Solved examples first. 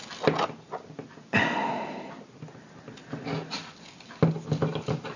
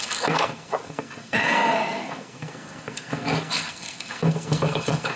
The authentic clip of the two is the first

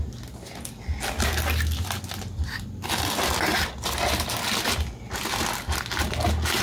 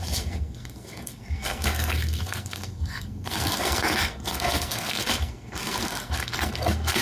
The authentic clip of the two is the first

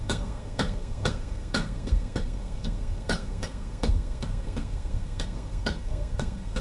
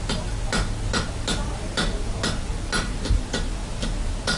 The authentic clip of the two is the second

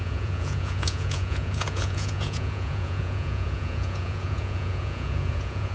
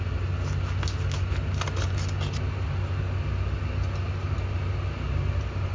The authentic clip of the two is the second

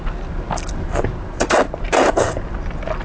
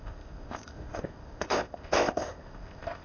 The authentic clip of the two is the first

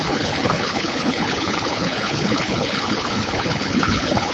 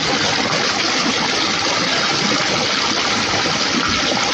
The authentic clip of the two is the second